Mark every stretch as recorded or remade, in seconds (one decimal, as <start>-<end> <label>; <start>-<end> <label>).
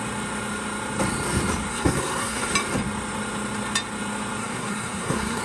0.0-1.7 recorded; 1.7-2.5 remade; 2.5-4.4 recorded; 4.4-5.4 remade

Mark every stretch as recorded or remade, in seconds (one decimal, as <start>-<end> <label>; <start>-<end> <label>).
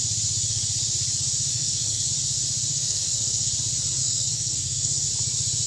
0.0-1.5 recorded; 1.5-2.1 remade; 2.1-2.7 recorded; 2.7-3.5 remade; 3.5-4.0 recorded; 4.0-5.1 remade; 5.1-5.7 recorded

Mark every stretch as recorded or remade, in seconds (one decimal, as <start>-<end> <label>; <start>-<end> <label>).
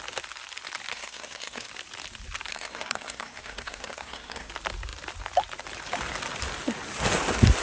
0.0-0.9 recorded; 0.9-1.7 remade; 1.7-2.5 recorded; 2.5-4.5 remade; 4.5-7.6 recorded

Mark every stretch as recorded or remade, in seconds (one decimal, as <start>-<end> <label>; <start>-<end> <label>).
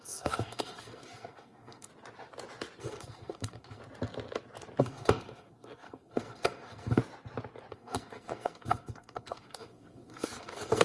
0.0-1.9 remade; 1.9-2.8 recorded; 2.8-3.8 remade; 3.8-4.8 recorded; 4.8-7.0 remade; 7.0-7.7 recorded; 7.7-10.8 remade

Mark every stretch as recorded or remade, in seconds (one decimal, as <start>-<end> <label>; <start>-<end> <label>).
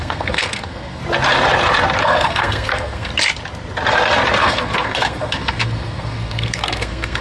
0.0-1.0 remade; 1.0-2.0 recorded; 2.0-3.1 remade; 3.1-4.4 recorded; 4.4-7.2 remade